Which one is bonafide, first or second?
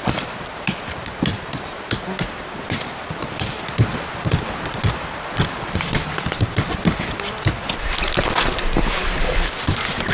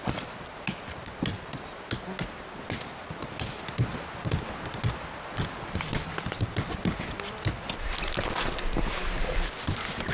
second